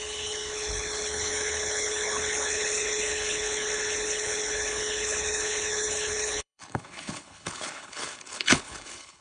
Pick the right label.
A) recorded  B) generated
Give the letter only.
B